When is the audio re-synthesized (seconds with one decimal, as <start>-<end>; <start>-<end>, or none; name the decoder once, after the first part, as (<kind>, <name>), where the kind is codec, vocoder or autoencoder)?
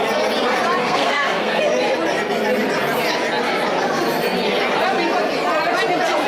0.8-1.6 (codec, SNAC)